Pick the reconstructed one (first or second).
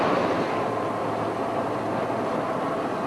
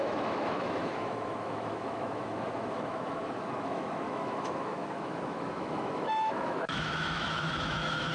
second